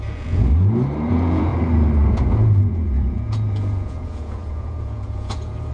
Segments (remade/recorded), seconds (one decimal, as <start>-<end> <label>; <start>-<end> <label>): 0.0-0.5 remade; 0.5-1.1 recorded; 1.1-1.5 remade; 1.5-2.1 recorded; 2.1-5.7 remade